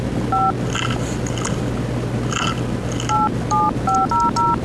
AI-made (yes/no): no